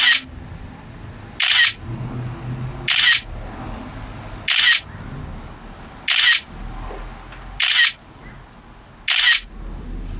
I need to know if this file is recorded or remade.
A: recorded